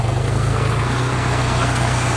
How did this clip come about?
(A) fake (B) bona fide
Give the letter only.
A